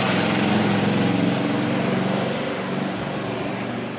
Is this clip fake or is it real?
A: fake